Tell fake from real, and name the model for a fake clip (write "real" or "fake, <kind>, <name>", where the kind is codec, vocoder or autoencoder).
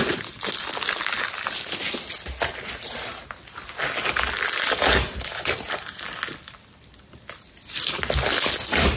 real